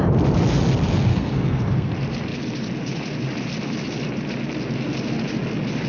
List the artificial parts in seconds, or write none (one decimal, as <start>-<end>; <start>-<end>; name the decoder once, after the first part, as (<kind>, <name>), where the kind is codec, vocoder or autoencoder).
1.1-1.9 (codec, SNAC)